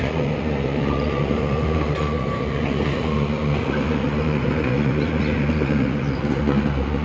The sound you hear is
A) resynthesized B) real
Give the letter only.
A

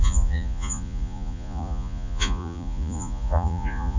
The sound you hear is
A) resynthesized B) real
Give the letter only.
A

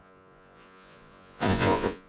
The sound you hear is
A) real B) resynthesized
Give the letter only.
B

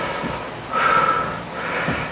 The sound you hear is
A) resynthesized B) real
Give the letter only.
B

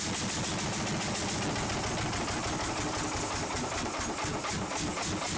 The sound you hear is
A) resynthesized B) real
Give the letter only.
B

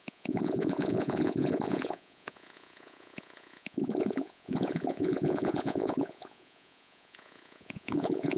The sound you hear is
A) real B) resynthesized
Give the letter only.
B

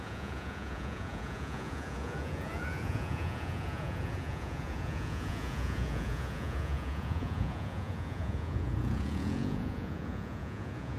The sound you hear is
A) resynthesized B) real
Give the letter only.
A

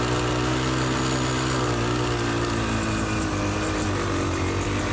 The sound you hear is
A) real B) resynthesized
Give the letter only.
A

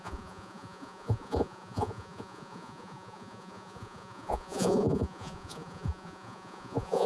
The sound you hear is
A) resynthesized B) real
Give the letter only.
A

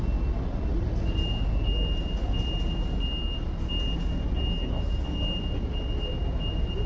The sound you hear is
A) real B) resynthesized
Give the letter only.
A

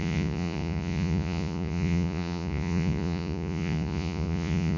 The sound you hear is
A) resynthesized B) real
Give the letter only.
A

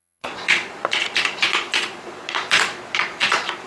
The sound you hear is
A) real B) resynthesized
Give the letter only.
B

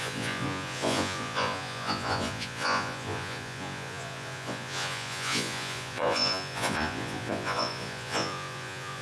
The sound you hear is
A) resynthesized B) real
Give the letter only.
A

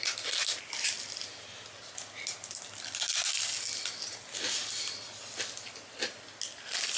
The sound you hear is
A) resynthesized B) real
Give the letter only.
B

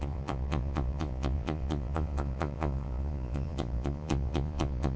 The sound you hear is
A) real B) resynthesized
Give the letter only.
B